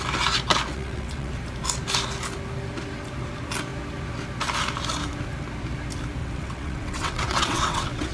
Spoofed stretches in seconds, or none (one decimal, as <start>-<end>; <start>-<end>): 0.7-1.3; 6.2-8.1